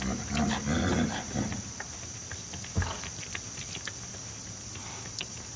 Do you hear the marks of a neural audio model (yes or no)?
no